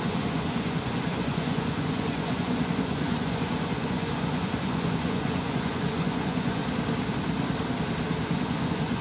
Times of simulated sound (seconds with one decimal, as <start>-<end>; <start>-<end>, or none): 0.0-6.6; 8.2-9.0